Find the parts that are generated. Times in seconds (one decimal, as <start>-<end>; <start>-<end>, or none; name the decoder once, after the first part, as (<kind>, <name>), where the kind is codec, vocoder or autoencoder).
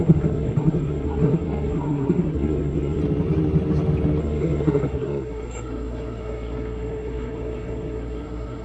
0.0-3.0 (codec, SNAC); 4.2-8.6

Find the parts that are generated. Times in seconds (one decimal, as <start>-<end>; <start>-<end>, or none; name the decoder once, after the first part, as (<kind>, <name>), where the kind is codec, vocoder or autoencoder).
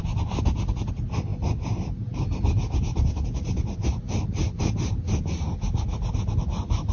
none